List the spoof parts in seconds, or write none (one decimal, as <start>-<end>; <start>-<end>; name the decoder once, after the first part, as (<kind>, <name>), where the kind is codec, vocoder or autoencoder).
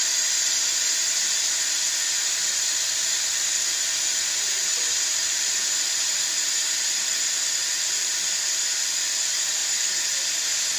0.0-10.8 (vocoder, BigVGAN v2)